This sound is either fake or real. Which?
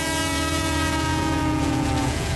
fake